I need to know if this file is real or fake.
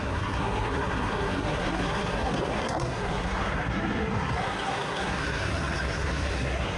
fake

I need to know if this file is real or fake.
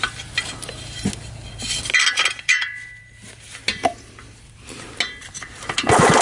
real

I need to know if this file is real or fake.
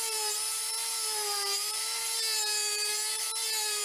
fake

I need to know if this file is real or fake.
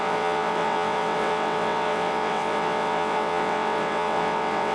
fake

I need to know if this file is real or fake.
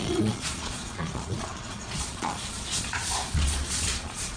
fake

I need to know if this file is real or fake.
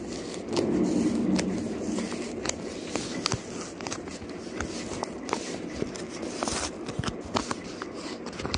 real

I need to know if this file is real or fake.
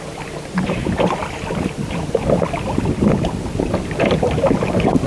real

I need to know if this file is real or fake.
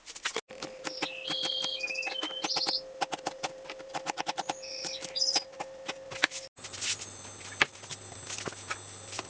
real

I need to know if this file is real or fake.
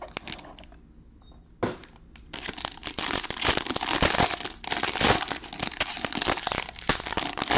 real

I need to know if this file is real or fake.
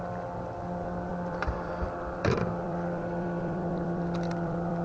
fake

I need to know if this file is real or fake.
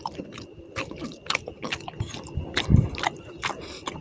real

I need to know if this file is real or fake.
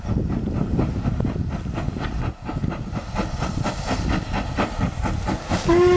real